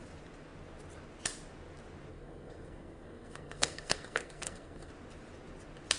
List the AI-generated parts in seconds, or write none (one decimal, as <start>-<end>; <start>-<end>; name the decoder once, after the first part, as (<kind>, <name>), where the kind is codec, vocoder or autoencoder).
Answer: 2.1-4.9 (codec, SNAC)